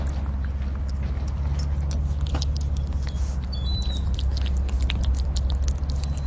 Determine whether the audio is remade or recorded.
recorded